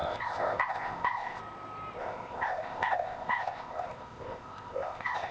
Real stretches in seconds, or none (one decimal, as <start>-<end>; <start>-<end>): 1.4-2.0